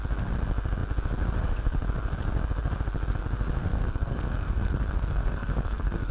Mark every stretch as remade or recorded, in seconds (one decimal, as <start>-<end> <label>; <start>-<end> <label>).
0.0-3.6 recorded; 3.6-6.1 remade